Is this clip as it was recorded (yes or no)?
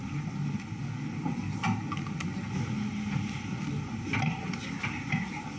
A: yes